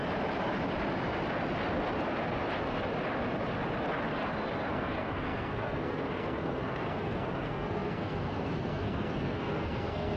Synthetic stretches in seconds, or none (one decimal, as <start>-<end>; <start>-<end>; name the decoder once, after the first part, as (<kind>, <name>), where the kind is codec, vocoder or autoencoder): 4.7-10.2 (codec, SNAC)